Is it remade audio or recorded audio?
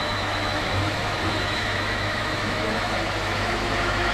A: remade